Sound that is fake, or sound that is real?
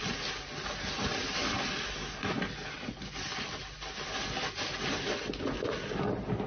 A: real